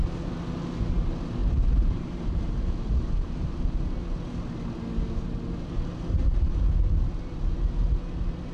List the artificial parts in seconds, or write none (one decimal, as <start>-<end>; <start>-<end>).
1.4-3.8

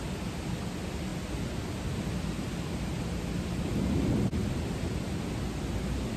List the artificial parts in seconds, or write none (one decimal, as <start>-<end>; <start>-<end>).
none

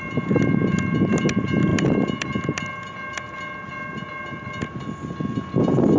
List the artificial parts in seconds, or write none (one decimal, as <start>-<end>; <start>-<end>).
1.7-2.3

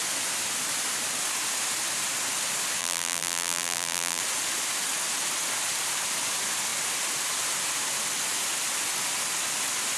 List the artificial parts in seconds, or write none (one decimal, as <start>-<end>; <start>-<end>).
2.8-4.2